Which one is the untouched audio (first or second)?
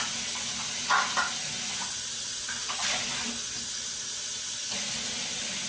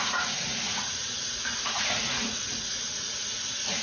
first